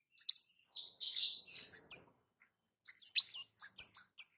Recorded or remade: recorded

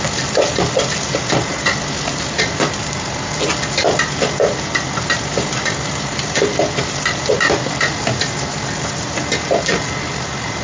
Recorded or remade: recorded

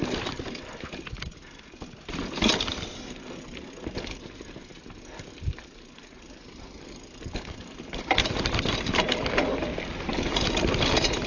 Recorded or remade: recorded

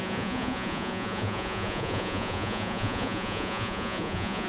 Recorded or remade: remade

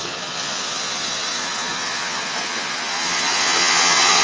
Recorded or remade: remade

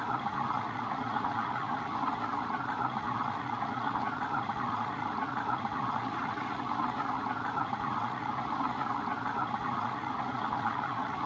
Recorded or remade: remade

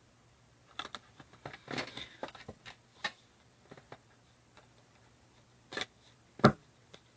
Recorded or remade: recorded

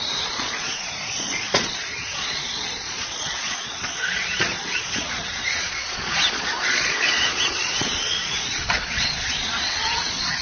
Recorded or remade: remade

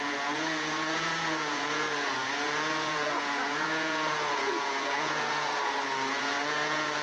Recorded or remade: remade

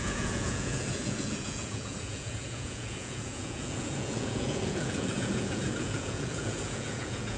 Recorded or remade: remade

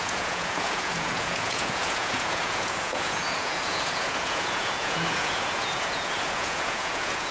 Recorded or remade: remade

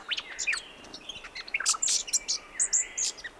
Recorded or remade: recorded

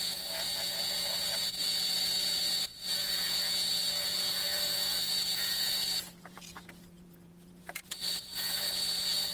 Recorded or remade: remade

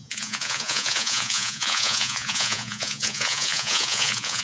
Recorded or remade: remade